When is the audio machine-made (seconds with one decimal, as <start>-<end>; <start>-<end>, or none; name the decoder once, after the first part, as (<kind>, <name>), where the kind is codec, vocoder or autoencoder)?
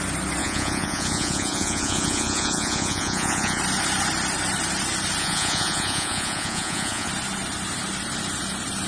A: 0.4-3.6 (vocoder, Vocos); 5.2-7.1